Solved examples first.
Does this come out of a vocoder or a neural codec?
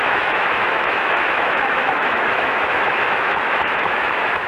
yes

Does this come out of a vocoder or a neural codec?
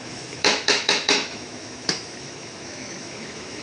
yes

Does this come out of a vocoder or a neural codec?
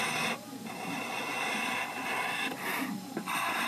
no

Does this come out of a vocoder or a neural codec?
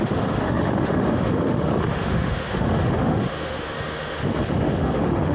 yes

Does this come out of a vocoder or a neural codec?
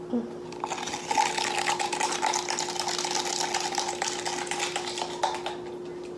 no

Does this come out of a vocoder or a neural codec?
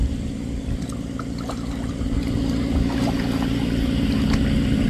no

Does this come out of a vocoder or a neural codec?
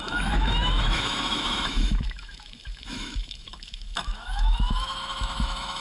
yes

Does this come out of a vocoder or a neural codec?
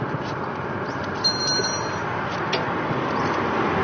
no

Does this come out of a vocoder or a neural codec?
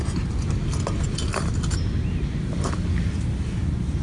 no